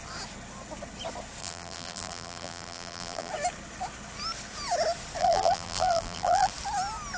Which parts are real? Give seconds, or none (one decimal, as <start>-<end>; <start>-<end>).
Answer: 0.0-1.4; 3.3-5.2; 6.5-7.2